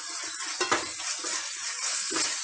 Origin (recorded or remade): recorded